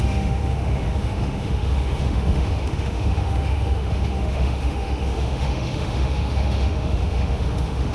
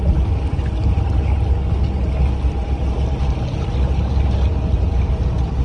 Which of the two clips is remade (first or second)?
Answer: first